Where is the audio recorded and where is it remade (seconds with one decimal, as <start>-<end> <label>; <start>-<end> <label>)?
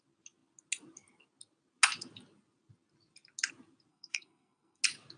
0.0-3.9 recorded; 3.9-4.8 remade; 4.8-5.2 recorded